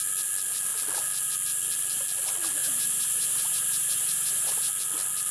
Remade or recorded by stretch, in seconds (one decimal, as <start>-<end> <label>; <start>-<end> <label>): 0.0-2.6 recorded; 2.6-4.7 remade; 4.7-5.3 recorded